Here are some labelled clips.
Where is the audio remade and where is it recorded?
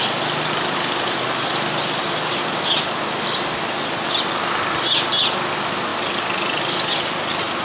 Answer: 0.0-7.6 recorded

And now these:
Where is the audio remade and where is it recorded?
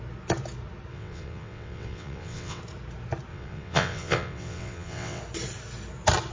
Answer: 0.0-0.9 recorded; 0.9-2.6 remade; 2.6-3.3 recorded; 3.3-5.2 remade; 5.2-6.3 recorded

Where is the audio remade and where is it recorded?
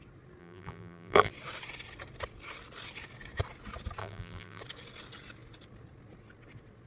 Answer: 0.0-0.4 recorded; 0.4-1.3 remade; 1.3-4.0 recorded; 4.0-4.6 remade; 4.6-6.9 recorded